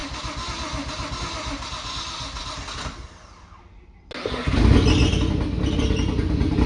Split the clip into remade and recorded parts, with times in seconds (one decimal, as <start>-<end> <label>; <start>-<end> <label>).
0.0-6.7 recorded